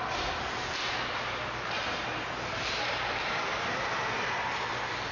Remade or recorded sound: recorded